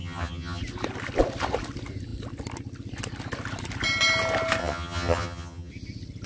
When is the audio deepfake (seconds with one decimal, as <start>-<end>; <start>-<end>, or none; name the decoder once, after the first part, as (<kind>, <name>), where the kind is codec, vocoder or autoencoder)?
0.0-0.6 (vocoder, HiFi-GAN); 4.6-5.7